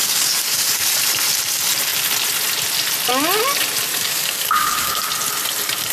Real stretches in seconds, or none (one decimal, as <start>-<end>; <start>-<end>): 0.9-3.9; 5.1-5.9